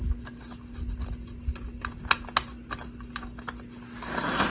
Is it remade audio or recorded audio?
recorded